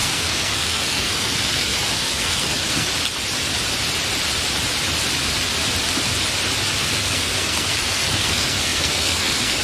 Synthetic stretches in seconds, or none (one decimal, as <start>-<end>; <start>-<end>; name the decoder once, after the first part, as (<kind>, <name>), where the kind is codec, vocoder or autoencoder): 0.0-2.9 (codec, SNAC); 6.8-9.6